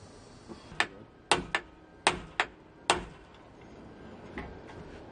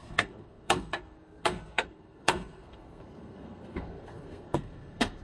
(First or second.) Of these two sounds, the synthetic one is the second